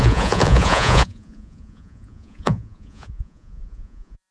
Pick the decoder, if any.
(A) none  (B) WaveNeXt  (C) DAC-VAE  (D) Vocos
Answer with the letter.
D